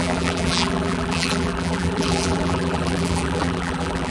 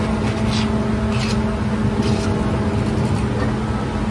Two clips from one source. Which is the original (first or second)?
second